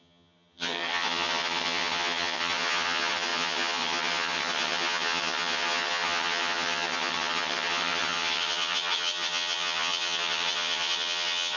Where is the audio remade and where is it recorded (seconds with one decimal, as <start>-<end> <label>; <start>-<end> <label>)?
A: 0.0-11.6 remade